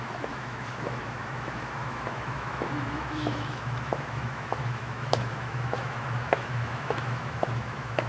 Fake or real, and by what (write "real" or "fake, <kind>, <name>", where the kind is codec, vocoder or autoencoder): fake, autoencoder, DAC-VAE